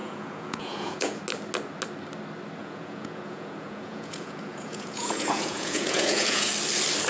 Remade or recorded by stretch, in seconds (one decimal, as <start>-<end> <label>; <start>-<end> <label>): 0.0-1.2 remade; 1.2-2.6 recorded; 2.6-6.5 remade; 6.5-7.1 recorded